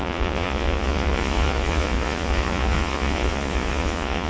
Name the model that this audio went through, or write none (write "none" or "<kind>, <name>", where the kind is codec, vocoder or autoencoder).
vocoder, Vocos